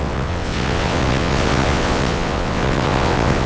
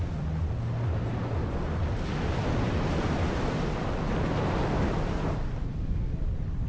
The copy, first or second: first